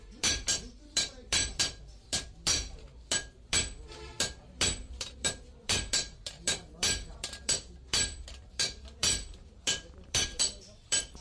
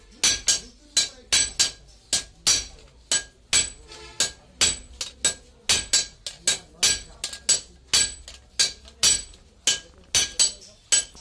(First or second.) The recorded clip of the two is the second